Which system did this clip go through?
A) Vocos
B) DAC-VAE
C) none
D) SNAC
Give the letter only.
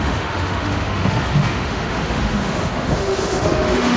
B